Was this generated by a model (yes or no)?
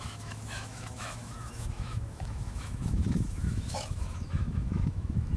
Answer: yes